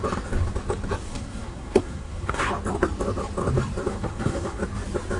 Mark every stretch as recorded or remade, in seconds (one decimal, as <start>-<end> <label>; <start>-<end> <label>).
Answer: 0.0-1.1 recorded; 1.1-2.5 remade; 2.5-3.9 recorded; 3.9-4.6 remade; 4.6-5.2 recorded

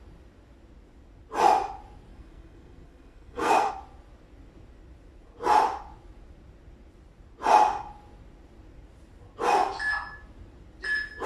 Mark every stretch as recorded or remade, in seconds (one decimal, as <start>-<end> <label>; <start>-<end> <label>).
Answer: 0.0-2.1 recorded; 2.1-3.7 remade; 3.7-11.3 recorded

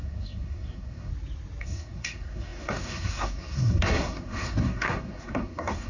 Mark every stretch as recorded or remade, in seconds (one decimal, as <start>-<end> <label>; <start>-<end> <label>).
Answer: 0.0-1.1 remade; 1.1-1.6 recorded; 1.6-5.9 remade

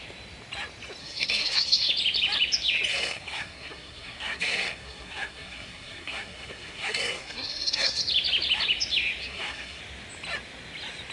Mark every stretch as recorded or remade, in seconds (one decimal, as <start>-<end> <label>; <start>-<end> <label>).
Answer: 0.0-1.0 recorded; 1.0-1.9 remade; 1.9-2.9 recorded; 2.9-8.0 remade; 8.0-9.2 recorded; 9.2-9.8 remade; 9.8-11.1 recorded

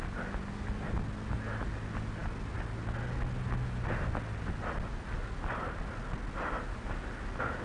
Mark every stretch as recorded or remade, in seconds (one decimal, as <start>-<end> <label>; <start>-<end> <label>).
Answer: 0.0-7.6 recorded

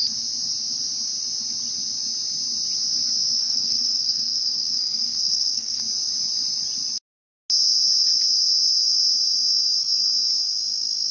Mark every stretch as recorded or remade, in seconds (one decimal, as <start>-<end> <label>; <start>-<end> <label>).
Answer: 0.0-3.4 recorded; 3.4-5.8 remade; 5.8-11.1 recorded

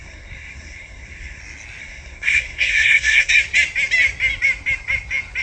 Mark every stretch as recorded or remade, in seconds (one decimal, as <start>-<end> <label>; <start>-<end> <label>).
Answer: 0.0-1.4 remade; 1.4-1.8 recorded; 1.8-3.3 remade; 3.3-5.4 recorded

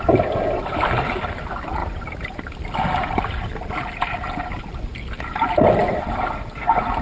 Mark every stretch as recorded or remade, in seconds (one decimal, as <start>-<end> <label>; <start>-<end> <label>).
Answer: 0.0-7.0 recorded